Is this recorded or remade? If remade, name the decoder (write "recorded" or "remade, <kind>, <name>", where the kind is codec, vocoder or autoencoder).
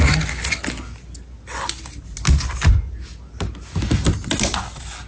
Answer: recorded